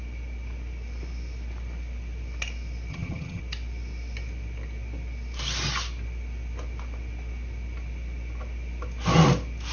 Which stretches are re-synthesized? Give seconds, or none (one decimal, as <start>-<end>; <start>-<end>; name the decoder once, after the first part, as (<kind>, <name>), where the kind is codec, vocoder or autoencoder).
2.9-3.4 (vocoder, HiFi-GAN)